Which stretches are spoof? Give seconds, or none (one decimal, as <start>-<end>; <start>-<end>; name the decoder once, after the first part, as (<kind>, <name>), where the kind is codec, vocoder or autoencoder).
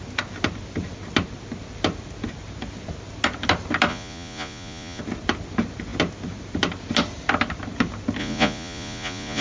3.9-5.0 (vocoder, Vocos); 8.2-9.4